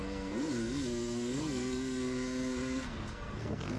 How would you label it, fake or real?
fake